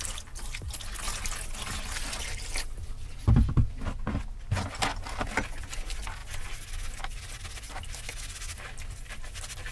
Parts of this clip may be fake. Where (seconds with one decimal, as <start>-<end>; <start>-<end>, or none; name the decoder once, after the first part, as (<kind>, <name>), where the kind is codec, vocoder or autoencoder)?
none